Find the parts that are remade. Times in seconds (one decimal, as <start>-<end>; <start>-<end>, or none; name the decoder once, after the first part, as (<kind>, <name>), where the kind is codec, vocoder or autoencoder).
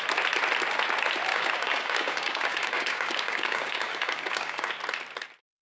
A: 1.3-4.7 (codec, DAC)